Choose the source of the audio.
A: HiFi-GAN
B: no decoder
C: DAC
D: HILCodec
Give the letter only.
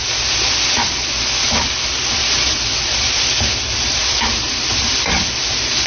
B